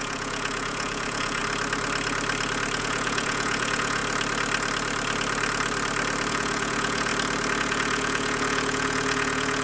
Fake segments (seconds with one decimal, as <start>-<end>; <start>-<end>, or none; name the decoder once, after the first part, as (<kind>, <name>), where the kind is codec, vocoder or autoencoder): 0.0-1.4 (vocoder, Vocos); 2.8-4.0; 6.3-7.1; 7.6-9.6